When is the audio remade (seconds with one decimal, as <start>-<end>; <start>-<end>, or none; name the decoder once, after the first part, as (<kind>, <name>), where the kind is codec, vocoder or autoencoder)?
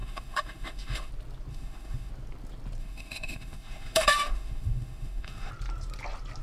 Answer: 0.0-1.1 (autoencoder, DAC-VAE); 1.5-2.1; 2.8-5.5